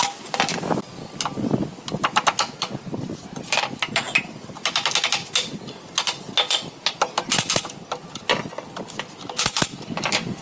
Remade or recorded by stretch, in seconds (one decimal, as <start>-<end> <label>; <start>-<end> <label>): 0.0-10.4 recorded